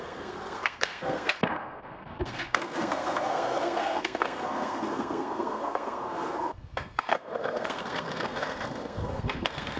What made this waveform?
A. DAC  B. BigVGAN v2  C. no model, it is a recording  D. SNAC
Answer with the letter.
D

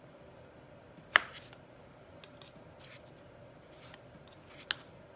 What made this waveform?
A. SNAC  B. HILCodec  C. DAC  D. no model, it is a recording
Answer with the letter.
D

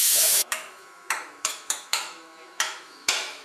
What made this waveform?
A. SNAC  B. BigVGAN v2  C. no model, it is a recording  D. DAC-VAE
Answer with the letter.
D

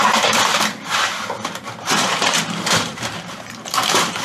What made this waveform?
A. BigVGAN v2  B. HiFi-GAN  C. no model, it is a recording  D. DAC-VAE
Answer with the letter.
A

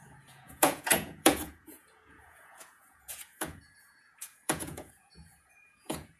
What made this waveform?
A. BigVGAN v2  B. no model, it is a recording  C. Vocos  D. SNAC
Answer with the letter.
C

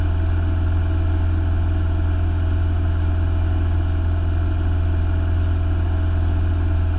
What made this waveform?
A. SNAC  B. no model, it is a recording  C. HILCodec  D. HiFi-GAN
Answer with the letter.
B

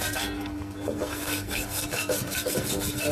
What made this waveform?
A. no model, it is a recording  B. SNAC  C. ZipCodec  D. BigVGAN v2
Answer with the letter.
B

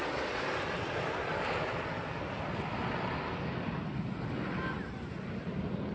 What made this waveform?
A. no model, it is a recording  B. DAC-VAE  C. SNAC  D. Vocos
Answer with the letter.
A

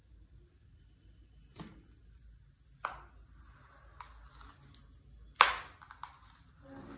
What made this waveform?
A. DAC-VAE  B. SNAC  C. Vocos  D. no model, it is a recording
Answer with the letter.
D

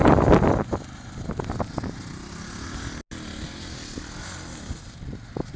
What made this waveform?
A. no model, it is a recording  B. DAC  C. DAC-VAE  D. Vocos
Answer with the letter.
A